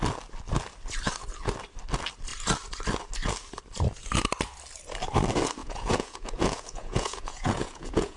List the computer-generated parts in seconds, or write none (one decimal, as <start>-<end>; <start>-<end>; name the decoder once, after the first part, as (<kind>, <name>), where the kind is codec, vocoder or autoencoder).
5.6-8.2 (vocoder, Vocos)